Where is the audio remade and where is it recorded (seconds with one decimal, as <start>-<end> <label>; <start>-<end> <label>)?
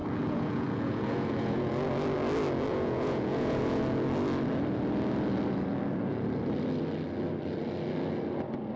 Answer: 0.0-1.7 remade; 1.7-2.7 recorded; 2.7-3.8 remade; 3.8-8.8 recorded